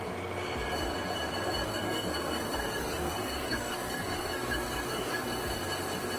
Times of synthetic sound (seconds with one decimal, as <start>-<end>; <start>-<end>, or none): 1.6-5.2